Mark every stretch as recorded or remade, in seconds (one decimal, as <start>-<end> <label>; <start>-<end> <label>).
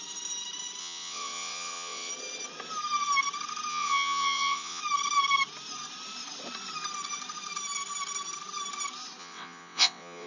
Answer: 0.0-0.8 recorded; 0.8-2.1 remade; 2.1-3.7 recorded; 3.7-4.8 remade; 4.8-9.2 recorded; 9.2-10.3 remade